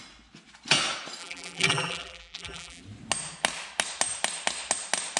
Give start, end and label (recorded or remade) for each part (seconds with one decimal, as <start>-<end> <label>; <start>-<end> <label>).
0.0-1.2 recorded; 1.2-2.8 remade; 2.8-5.2 recorded